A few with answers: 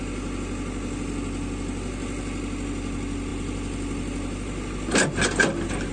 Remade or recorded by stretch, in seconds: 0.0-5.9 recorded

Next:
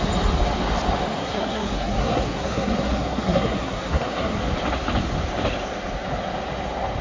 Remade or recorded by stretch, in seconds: 0.0-1.2 recorded; 1.2-4.4 remade; 4.4-7.0 recorded

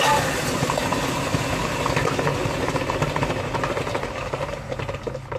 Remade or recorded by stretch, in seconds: 0.0-5.4 recorded

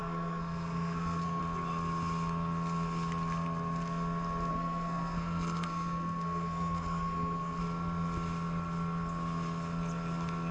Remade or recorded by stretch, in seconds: 0.0-1.4 remade; 1.4-4.5 recorded; 4.5-7.6 remade; 7.6-10.5 recorded

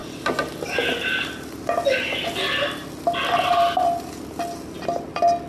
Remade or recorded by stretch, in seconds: 0.0-5.5 recorded

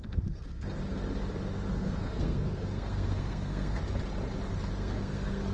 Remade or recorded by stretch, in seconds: 0.0-0.8 remade; 0.8-1.7 recorded; 1.7-3.8 remade; 3.8-4.7 recorded; 4.7-5.5 remade

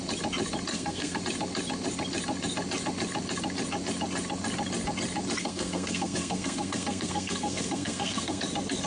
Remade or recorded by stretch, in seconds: 0.0-0.7 recorded; 0.7-1.2 remade; 1.2-5.4 recorded; 5.4-8.4 remade; 8.4-8.9 recorded

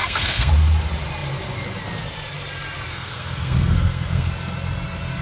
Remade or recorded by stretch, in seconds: 0.0-0.5 remade; 0.5-2.9 recorded; 2.9-4.3 remade; 4.3-5.2 recorded